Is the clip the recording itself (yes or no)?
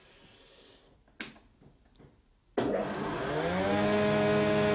yes